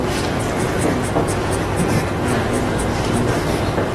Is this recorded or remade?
recorded